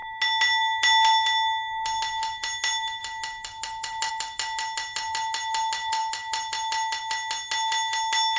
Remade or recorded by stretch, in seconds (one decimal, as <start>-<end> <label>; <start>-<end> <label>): 0.0-8.4 recorded